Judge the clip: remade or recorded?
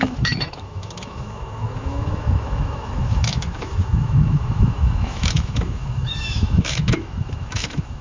remade